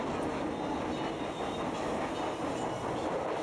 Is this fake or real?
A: real